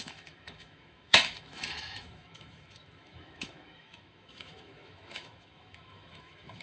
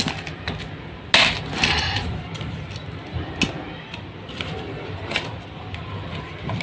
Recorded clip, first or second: second